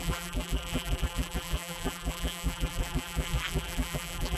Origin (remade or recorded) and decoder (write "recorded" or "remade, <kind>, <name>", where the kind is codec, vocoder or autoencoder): remade, vocoder, BigVGAN v2